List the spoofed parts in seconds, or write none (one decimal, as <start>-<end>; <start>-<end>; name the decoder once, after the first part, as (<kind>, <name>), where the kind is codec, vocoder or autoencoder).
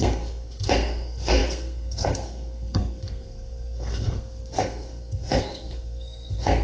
0.0-6.6 (codec, SNAC)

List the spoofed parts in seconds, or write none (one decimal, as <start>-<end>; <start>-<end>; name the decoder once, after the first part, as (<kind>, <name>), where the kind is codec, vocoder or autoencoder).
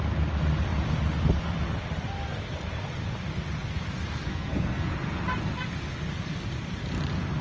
4.3-4.9 (codec, SNAC)